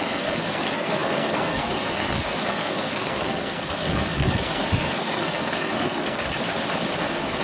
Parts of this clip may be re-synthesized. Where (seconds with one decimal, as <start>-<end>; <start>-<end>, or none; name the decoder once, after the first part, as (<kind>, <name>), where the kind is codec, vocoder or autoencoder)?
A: 0.0-6.2 (codec, SNAC); 7.0-7.4

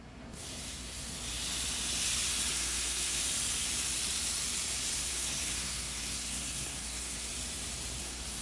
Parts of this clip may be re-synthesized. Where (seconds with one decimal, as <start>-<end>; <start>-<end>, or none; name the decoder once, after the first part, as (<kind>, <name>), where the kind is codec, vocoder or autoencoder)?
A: 0.0-1.1 (codec, SNAC); 2.5-3.2; 5.1-7.3; 8.0-8.4

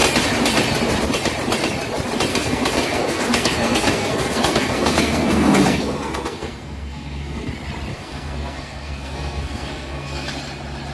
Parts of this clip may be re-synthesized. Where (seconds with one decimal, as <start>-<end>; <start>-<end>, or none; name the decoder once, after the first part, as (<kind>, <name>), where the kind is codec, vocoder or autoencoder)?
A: 2.3-7.5 (codec, SNAC); 7.9-10.3

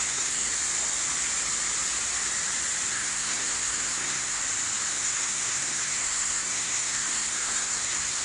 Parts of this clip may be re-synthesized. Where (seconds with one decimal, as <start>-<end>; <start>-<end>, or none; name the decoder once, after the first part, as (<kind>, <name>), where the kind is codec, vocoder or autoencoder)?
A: 0.0-0.5 (codec, SNAC); 2.9-4.4; 4.9-8.2

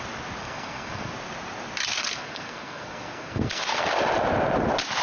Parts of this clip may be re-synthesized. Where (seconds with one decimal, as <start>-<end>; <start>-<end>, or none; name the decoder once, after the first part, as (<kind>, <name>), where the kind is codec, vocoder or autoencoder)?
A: 0.4-1.1 (codec, SNAC); 1.9-3.9

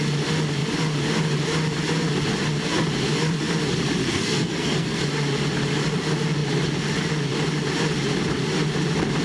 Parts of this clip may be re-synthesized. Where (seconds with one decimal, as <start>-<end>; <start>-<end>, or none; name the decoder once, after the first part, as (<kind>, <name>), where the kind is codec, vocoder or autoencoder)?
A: 4.0-5.0 (codec, SNAC)

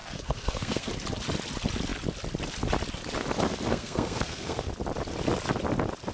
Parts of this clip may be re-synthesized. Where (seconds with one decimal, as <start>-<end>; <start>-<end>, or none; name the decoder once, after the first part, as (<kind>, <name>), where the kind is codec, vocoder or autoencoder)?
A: 0.0-0.9 (codec, SNAC); 3.7-4.7